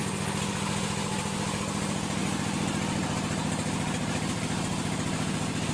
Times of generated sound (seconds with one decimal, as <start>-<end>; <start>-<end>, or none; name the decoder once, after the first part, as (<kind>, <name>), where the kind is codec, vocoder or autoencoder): none